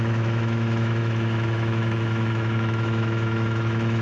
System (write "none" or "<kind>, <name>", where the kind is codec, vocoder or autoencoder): autoencoder, DAC-VAE